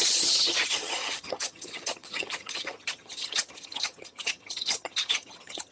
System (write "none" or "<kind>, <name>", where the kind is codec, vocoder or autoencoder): vocoder, HiFi-GAN